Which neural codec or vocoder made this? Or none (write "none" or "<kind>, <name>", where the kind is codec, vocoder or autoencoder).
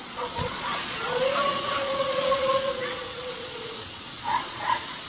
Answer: vocoder, Vocos